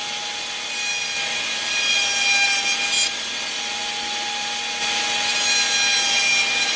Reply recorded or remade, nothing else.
recorded